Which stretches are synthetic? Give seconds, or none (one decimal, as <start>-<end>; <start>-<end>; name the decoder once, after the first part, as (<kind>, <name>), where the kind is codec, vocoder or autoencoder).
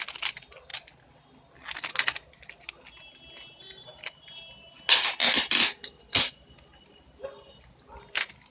none